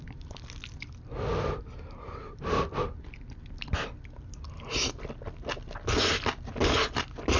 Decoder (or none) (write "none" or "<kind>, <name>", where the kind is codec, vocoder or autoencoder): none